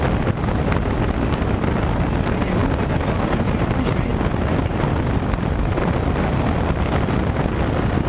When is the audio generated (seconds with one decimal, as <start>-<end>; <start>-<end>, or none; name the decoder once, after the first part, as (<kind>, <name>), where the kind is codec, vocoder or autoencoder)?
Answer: none